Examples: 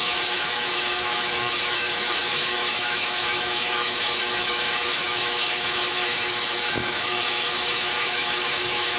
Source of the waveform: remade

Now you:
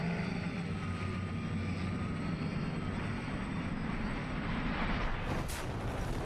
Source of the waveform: remade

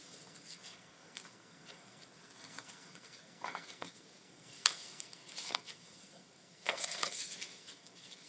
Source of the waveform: remade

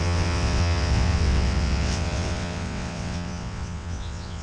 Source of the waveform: remade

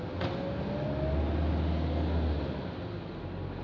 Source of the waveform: recorded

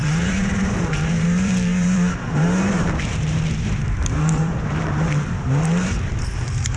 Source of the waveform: remade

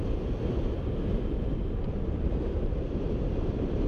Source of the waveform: recorded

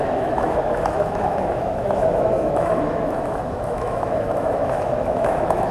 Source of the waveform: remade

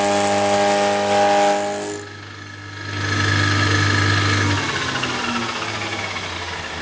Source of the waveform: recorded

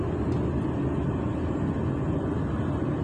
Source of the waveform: recorded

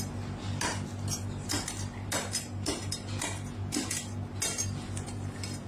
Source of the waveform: recorded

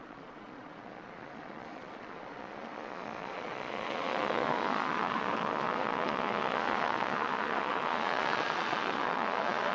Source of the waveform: remade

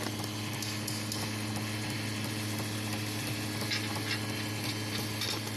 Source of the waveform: recorded